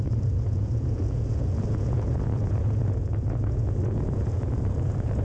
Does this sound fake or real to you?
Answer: fake